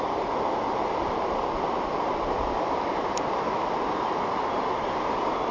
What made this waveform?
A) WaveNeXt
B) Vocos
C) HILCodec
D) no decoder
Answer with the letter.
D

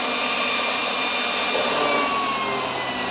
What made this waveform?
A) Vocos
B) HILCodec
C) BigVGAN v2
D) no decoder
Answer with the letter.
D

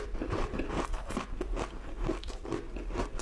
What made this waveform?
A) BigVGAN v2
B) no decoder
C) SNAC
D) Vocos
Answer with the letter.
B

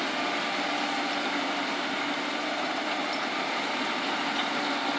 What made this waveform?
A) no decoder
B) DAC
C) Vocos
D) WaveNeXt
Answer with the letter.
A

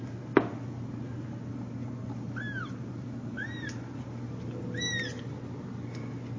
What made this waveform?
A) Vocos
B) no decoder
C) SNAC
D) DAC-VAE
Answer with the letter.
B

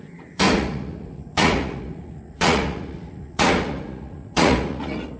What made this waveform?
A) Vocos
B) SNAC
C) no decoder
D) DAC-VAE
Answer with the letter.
A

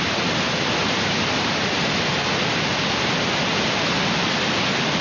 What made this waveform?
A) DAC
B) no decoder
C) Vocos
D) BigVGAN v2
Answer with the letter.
B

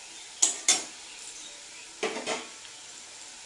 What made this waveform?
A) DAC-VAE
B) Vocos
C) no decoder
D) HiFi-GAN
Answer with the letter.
C